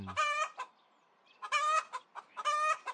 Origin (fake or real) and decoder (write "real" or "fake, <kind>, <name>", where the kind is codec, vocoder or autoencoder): real